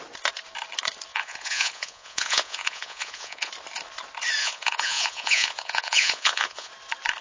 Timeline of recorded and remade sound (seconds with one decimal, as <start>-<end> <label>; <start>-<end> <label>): 0.0-1.1 recorded; 1.1-3.5 remade; 3.5-4.4 recorded; 4.4-6.7 remade; 6.7-7.2 recorded